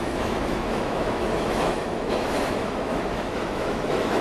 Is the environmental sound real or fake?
fake